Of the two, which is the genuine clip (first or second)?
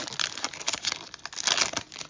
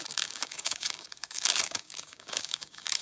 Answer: first